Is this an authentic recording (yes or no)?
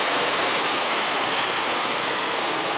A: no